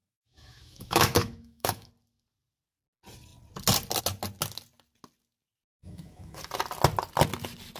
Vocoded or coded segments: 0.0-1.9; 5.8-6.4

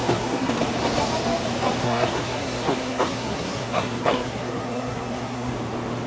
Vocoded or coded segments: 0.0-0.5; 1.8-5.5

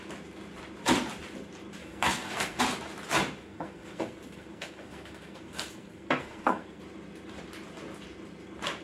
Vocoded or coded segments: 1.8-2.6; 3.4-6.8